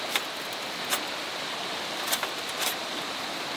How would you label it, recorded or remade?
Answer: recorded